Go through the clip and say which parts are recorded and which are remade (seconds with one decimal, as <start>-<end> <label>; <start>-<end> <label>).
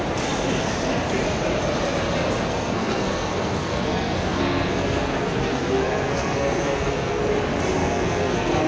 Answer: 0.0-2.5 recorded; 2.5-7.3 remade; 7.3-7.8 recorded; 7.8-8.7 remade